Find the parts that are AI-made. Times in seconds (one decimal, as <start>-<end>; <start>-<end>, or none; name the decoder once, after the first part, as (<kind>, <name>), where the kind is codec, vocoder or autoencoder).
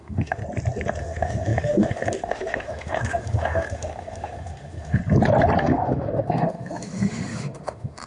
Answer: 0.0-0.4 (autoencoder, DAC-VAE); 1.0-5.0; 5.6-8.1